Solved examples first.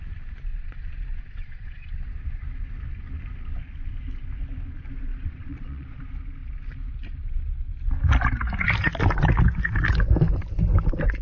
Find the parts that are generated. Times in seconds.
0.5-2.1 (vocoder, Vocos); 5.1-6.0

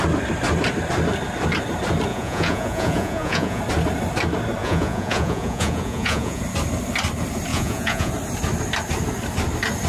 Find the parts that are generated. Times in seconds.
2.1-3.6 (vocoder, Vocos); 4.6-6.4; 7.5-8.1

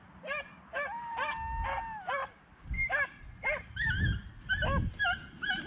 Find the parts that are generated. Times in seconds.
none